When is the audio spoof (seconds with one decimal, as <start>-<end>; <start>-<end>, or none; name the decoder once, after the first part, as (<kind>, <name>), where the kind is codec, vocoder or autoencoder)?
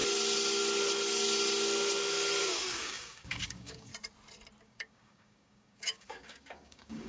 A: 2.4-3.9 (codec, DAC); 4.6-7.1